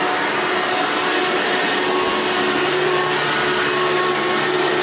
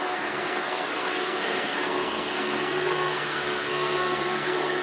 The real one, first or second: first